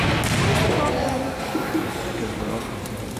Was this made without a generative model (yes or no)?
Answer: yes